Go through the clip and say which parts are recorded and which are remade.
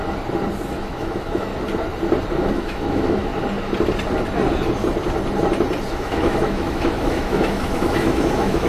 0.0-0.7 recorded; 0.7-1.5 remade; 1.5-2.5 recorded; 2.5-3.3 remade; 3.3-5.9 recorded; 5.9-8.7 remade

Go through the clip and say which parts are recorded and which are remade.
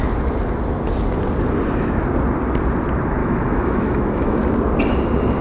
0.0-3.2 recorded; 3.2-4.4 remade; 4.4-5.4 recorded